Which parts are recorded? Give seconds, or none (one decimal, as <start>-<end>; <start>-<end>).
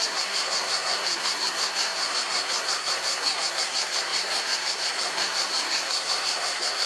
none